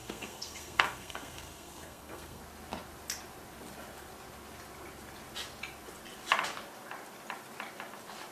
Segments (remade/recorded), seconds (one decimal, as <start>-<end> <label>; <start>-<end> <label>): 0.0-2.4 remade; 2.4-8.3 recorded